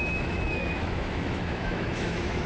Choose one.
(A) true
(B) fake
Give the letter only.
B